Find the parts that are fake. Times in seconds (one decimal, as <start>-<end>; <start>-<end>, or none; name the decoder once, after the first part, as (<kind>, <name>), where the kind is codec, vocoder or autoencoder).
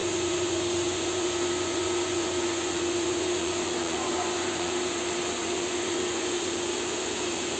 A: 0.0-7.6 (vocoder, Vocos)